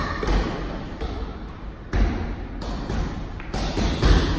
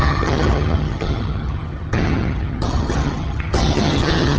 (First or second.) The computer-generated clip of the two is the second